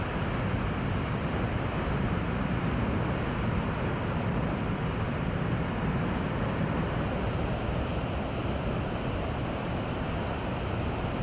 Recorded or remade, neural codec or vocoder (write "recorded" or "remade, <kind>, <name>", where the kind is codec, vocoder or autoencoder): recorded